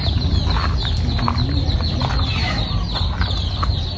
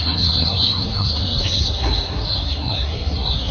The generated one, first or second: second